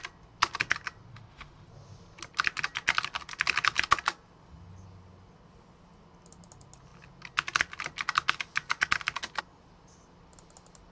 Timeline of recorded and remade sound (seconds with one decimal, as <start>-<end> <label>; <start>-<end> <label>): 0.0-1.1 recorded; 1.1-1.7 remade; 1.7-10.9 recorded